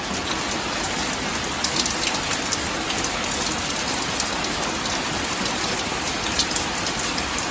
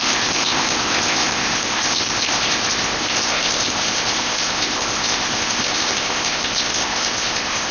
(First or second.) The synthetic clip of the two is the second